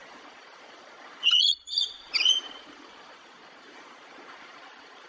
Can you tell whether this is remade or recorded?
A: remade